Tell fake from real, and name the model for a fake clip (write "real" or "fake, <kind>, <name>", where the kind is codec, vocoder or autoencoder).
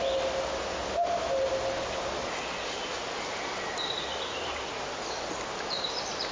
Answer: real